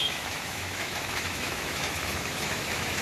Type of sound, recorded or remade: remade